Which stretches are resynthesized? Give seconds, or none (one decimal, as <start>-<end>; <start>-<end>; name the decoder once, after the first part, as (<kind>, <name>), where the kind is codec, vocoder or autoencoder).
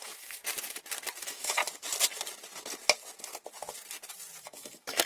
0.0-0.4 (autoencoder, DAC-VAE); 1.2-1.6; 4.4-5.1